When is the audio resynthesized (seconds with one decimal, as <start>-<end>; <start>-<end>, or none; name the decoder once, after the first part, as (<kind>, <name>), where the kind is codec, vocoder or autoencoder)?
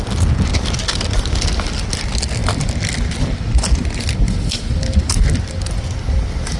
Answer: none